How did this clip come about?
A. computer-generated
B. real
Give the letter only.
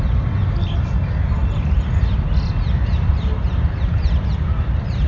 B